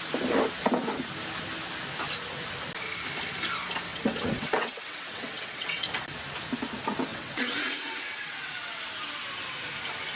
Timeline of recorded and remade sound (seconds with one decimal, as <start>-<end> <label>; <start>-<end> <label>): 0.0-3.9 recorded; 3.9-5.8 remade; 5.8-7.1 recorded; 7.1-8.9 remade; 8.9-10.2 recorded